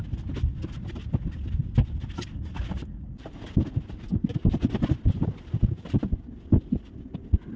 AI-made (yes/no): no